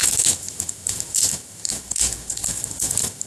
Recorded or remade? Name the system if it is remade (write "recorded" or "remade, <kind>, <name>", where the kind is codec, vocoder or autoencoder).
remade, autoencoder, DAC-VAE